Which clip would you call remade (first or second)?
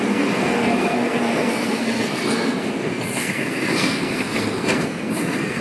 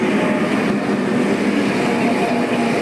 first